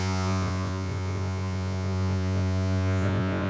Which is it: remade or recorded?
remade